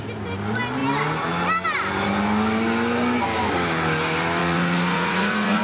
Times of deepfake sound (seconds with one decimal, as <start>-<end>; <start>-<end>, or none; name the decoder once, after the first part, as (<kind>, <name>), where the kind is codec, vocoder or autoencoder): 4.4-5.6 (vocoder, Vocos)